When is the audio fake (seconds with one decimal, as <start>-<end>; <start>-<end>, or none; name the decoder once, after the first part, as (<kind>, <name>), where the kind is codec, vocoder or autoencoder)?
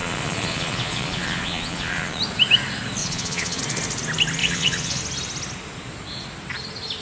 0.0-2.2 (vocoder, Vocos); 3.0-3.6; 4.4-5.0